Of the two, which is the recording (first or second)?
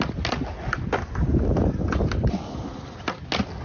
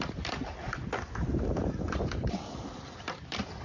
first